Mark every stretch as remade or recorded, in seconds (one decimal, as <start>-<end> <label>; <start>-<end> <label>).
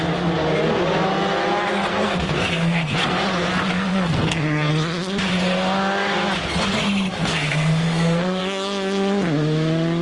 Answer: 0.0-1.9 recorded; 1.9-3.2 remade; 3.2-3.7 recorded; 3.7-4.7 remade; 4.7-7.3 recorded; 7.3-8.4 remade; 8.4-10.0 recorded